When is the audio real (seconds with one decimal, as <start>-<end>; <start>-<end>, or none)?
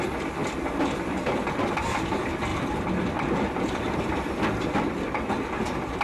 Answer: 0.0-0.4; 2.1-2.5; 4.0-6.0